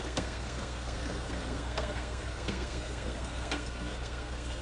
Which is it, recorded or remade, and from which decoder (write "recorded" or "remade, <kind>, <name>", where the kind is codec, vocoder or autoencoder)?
remade, codec, SNAC